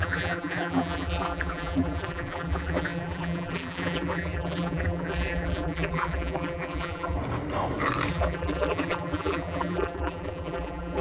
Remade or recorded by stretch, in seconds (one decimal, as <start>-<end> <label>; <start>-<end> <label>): 0.0-7.2 remade; 7.2-8.1 recorded; 8.1-11.0 remade